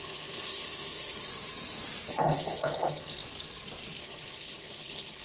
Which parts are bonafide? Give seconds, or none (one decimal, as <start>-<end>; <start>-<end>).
1.3-2.1; 3.2-4.0